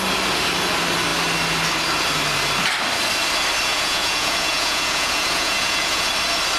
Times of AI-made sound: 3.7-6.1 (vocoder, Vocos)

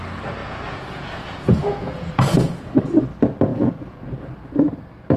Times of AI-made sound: 0.4-2.7 (vocoder, Vocos); 3.5-4.1